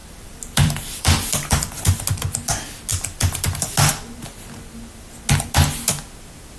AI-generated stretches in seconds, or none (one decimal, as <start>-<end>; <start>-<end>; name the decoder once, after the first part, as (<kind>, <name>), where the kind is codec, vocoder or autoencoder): 0.0-1.8 (vocoder, BigVGAN v2); 2.9-3.7